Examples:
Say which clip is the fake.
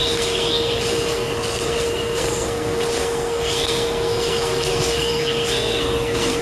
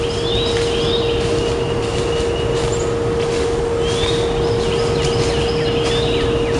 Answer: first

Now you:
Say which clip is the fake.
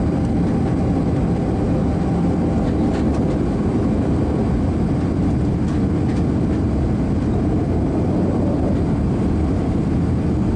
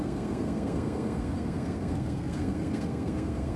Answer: second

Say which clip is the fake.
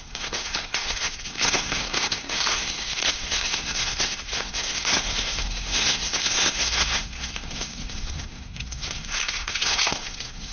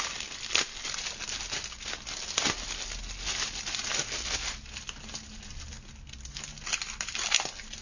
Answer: first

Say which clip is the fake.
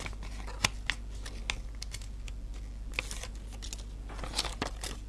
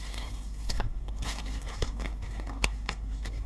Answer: second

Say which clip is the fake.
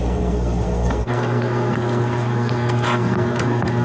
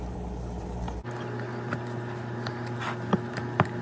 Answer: first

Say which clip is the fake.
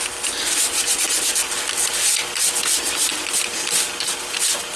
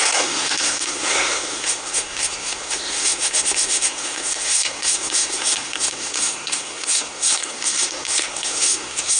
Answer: second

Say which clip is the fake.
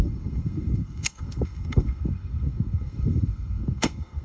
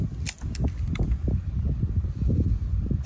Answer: first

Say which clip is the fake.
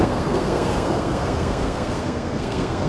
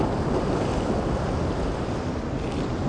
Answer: first